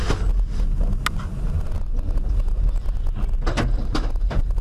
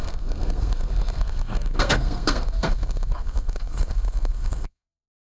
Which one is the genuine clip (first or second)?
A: first